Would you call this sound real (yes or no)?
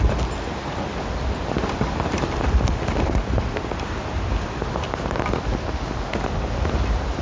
yes